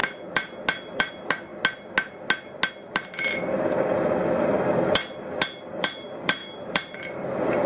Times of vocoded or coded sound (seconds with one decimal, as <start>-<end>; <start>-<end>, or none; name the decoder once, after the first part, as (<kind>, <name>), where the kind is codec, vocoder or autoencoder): 0.0-1.5 (vocoder, BigVGAN v2); 2.7-5.0; 5.6-7.7